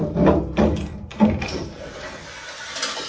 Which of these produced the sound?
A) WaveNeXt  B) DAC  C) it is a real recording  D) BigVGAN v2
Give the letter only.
C